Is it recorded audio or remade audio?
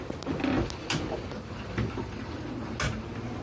recorded